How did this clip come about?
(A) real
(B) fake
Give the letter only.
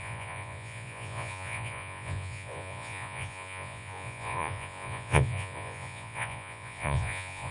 B